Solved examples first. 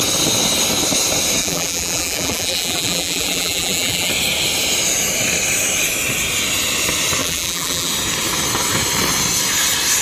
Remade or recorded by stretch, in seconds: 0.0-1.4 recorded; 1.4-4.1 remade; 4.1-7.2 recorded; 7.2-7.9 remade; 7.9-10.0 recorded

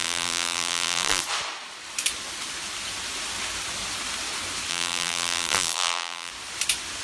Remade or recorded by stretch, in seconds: 0.0-1.2 remade; 1.2-4.7 recorded; 4.7-6.3 remade; 6.3-7.0 recorded

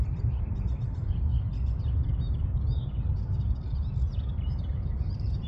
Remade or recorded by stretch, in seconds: 0.0-1.3 remade; 1.3-4.6 recorded; 4.6-5.5 remade

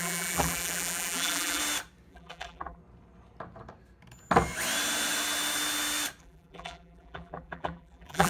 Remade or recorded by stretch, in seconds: 0.0-1.6 remade; 1.6-2.1 recorded; 2.1-2.8 remade; 2.8-6.2 recorded; 6.2-8.3 remade

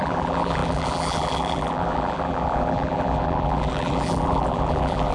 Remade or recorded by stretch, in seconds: 0.0-5.1 remade

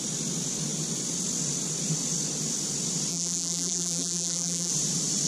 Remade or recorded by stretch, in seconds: 0.0-3.1 recorded; 3.1-4.7 remade; 4.7-5.3 recorded

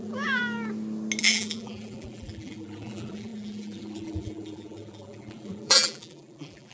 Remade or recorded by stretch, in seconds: 0.0-0.4 remade; 0.4-1.2 recorded; 1.2-6.7 remade

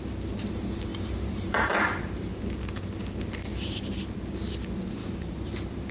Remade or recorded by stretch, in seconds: 0.0-0.9 recorded; 0.9-2.4 remade; 2.4-3.5 recorded; 3.5-4.3 remade; 4.3-5.0 recorded; 5.0-5.9 remade